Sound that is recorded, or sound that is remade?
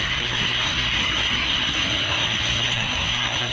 remade